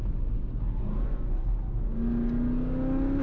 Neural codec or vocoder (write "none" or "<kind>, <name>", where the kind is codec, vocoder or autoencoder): none